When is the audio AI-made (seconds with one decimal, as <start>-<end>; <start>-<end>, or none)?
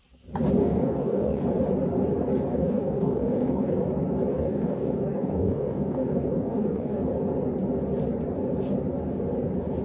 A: 0.6-1.4; 2.5-3.8; 4.3-7.0